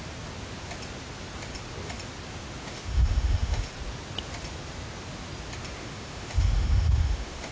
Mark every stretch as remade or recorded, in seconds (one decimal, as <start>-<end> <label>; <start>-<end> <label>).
0.0-2.6 recorded; 2.6-3.7 remade; 3.7-5.8 recorded; 5.8-7.5 remade